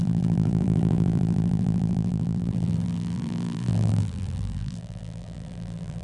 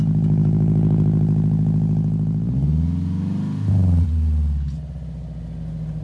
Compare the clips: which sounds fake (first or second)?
first